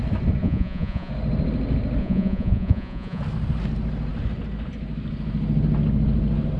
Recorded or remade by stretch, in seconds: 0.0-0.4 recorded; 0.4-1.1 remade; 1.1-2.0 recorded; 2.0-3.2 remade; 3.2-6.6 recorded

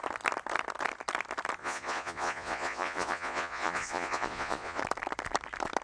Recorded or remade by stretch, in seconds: 0.0-1.6 recorded; 1.6-4.8 remade; 4.8-5.8 recorded

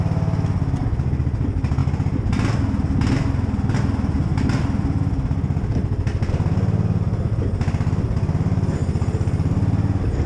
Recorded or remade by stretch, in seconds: 0.0-10.3 recorded